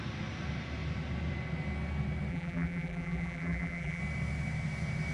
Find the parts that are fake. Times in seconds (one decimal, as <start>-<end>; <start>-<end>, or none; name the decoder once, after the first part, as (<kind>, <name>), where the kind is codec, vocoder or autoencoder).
2.3-4.0 (vocoder, BigVGAN v2)